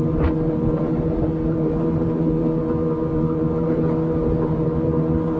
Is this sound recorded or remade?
remade